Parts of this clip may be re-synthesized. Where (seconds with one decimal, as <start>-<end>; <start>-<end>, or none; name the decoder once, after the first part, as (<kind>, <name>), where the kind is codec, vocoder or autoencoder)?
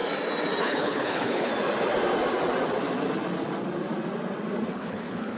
0.6-1.5 (codec, HILCodec); 4.7-5.4